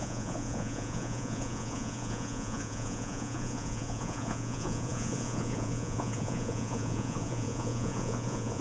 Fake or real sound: fake